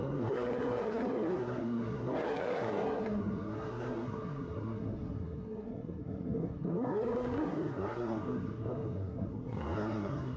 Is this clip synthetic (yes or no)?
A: yes